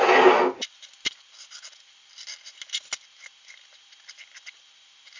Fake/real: real